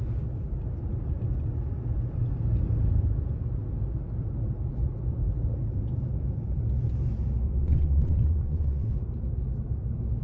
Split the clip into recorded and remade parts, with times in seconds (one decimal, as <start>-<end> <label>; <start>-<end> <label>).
0.0-7.6 recorded; 7.6-8.9 remade; 8.9-10.2 recorded